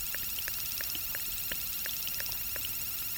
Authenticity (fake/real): real